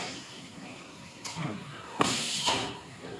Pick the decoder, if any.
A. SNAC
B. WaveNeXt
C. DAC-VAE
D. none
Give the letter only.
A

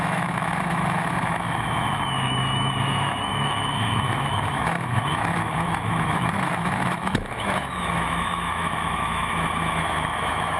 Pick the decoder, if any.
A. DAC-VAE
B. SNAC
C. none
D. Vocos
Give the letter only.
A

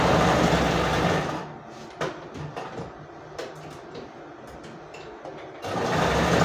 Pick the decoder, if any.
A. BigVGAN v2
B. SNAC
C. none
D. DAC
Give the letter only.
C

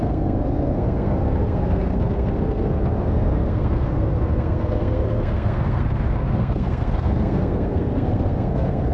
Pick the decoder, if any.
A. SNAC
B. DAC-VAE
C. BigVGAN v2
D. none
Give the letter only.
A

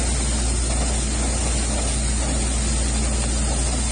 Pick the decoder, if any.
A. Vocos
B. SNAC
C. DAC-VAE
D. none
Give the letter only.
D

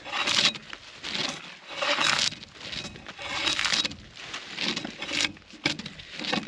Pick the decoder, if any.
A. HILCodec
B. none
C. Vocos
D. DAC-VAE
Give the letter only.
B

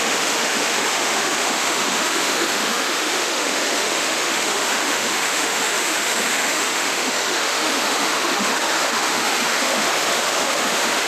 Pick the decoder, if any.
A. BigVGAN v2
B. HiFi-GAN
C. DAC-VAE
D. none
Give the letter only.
C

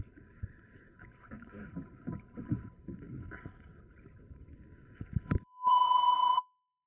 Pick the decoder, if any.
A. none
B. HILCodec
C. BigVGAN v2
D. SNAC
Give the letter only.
B